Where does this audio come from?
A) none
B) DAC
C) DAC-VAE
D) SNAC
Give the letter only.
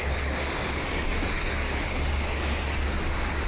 B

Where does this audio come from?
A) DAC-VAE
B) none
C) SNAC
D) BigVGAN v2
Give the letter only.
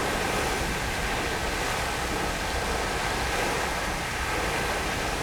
B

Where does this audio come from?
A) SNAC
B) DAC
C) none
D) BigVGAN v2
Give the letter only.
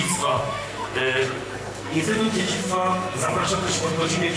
A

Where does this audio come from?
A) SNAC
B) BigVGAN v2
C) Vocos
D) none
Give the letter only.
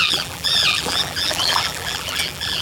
B